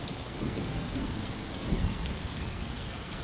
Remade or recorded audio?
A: remade